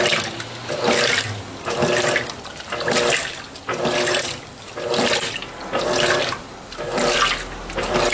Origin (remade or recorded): recorded